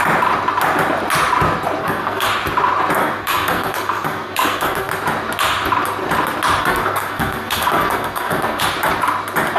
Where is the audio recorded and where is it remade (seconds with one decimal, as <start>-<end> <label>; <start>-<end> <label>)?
0.0-1.8 recorded; 1.8-2.3 remade; 2.3-3.0 recorded; 3.0-4.9 remade; 4.9-6.6 recorded; 6.6-8.6 remade; 8.6-9.6 recorded